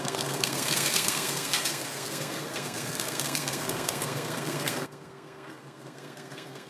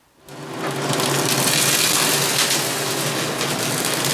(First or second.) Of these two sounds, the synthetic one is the first